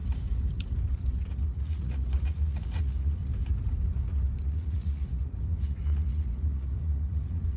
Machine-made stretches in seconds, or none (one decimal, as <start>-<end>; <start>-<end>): 1.3-3.2; 4.4-7.6